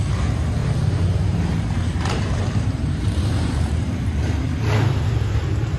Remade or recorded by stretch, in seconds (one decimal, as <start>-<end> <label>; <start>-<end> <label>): 0.0-0.6 recorded; 0.6-4.1 remade; 4.1-5.8 recorded